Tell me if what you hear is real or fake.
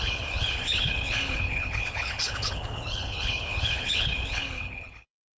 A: fake